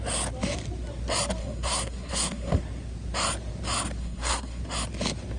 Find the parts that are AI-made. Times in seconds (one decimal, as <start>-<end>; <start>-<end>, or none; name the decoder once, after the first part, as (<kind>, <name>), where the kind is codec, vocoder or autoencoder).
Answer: 1.4-2.6 (codec, SNAC); 4.0-4.6